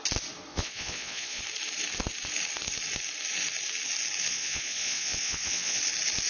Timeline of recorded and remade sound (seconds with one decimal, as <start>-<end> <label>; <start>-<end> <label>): 0.0-0.5 recorded; 0.5-1.4 remade; 1.4-4.3 recorded; 4.3-5.8 remade; 5.8-6.3 recorded